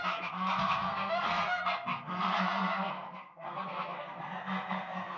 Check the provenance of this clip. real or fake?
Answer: fake